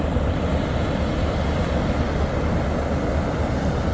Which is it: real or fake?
real